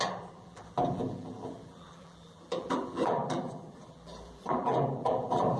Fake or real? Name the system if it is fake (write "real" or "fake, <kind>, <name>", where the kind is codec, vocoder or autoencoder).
fake, vocoder, BigVGAN v2